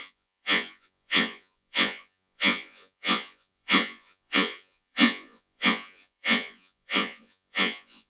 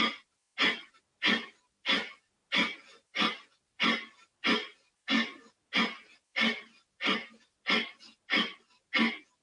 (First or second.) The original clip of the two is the second